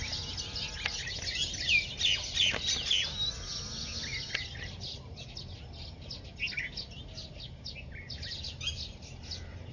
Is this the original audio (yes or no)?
yes